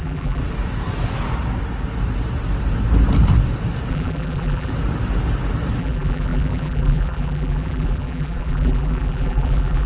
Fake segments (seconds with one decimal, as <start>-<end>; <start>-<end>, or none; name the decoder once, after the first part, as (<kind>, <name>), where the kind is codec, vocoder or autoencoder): 0.0-0.4 (vocoder, BigVGAN v2); 3.9-4.7; 5.8-9.9